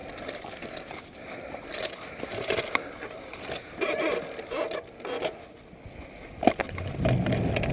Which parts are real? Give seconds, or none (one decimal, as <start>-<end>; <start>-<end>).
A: 0.0-7.7